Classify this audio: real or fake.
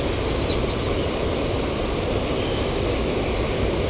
real